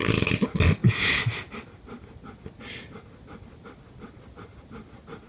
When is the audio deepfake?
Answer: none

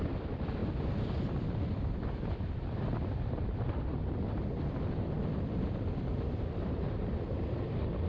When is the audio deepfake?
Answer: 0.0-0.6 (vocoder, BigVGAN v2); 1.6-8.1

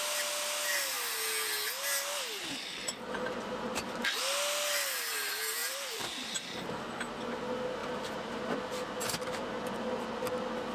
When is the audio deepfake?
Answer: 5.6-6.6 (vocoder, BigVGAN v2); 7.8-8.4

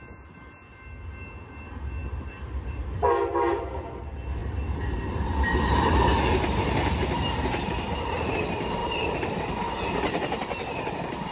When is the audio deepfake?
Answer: 2.0-3.1 (vocoder, BigVGAN v2); 4.4-8.3; 8.8-9.7

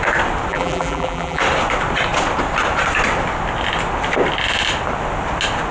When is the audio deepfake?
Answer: 0.5-1.4 (vocoder, BigVGAN v2)